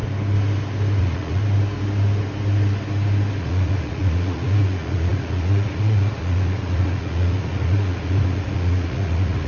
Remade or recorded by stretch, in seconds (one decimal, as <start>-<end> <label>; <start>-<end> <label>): 0.0-1.0 recorded; 1.0-1.4 remade; 1.4-3.4 recorded; 3.4-9.5 remade